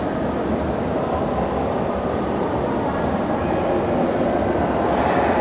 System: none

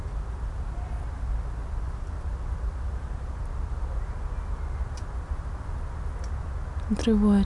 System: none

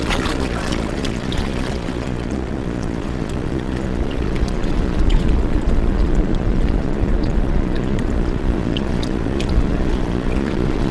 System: vocoder, Vocos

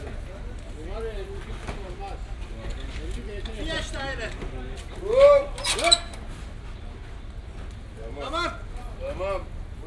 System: none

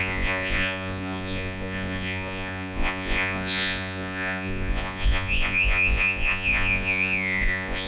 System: vocoder, Vocos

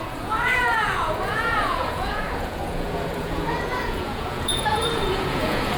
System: vocoder, Vocos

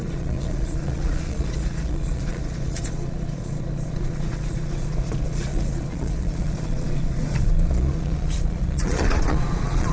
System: vocoder, Vocos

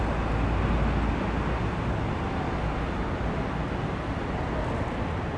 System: none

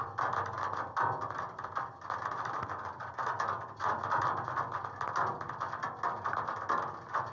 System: none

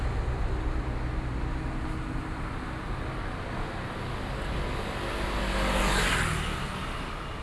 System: none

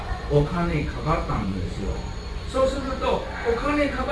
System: vocoder, Vocos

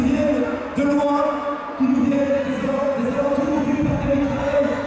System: vocoder, Vocos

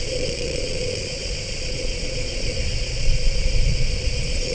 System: vocoder, Vocos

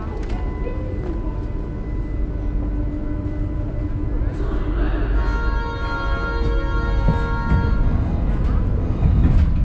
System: none